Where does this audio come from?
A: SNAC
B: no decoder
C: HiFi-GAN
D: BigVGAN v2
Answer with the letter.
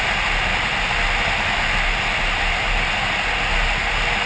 B